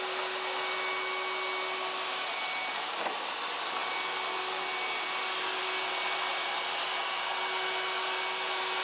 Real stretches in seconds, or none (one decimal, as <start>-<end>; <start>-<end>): 0.0-8.8

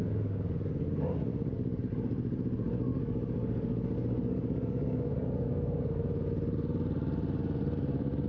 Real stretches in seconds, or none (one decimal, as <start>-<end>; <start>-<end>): 0.7-1.3; 1.8-2.9; 6.0-8.3

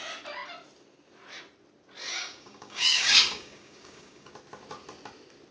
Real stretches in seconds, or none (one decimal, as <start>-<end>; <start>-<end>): 0.0-2.1; 4.3-5.5